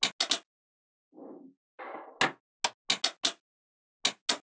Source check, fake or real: real